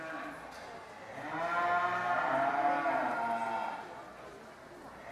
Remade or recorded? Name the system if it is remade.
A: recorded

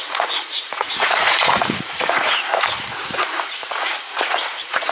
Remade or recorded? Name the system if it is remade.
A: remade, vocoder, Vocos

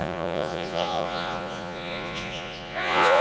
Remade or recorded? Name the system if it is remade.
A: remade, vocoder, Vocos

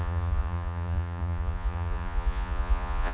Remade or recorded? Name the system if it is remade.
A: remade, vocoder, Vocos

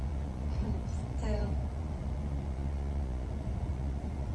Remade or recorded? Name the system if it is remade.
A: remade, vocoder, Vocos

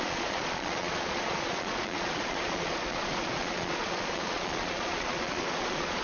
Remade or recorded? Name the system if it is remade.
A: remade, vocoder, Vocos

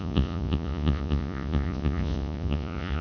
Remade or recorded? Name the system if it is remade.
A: remade, vocoder, Vocos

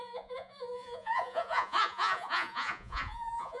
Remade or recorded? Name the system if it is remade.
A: remade, vocoder, Vocos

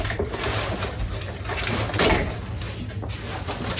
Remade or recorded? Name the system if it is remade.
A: recorded